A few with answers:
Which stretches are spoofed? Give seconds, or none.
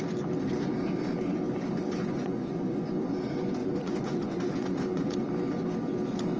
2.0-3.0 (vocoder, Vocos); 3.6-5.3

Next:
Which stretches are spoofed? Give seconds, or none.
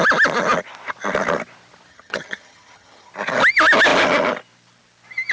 1.9-3.1 (vocoder, HiFi-GAN)